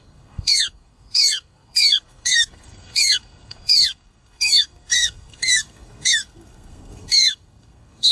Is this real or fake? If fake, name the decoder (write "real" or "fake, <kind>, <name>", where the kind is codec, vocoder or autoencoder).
fake, codec, SNAC